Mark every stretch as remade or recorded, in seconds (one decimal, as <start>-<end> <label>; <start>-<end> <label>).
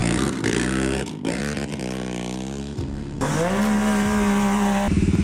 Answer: 0.0-1.4 remade; 1.4-2.6 recorded; 2.6-3.3 remade; 3.3-5.2 recorded